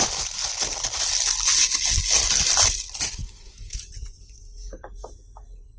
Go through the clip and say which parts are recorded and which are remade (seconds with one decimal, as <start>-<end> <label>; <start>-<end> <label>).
0.0-3.2 recorded; 3.2-3.9 remade; 3.9-5.8 recorded